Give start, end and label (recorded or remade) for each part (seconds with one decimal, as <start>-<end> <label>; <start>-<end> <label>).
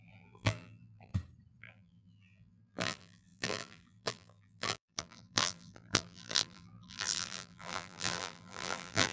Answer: 0.0-1.1 remade; 1.1-1.6 recorded; 1.6-9.1 remade